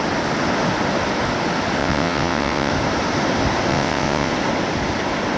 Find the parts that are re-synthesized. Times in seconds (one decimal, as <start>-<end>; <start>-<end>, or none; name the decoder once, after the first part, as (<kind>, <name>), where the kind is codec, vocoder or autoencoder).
1.8-2.7 (vocoder, WaveNeXt); 3.7-4.3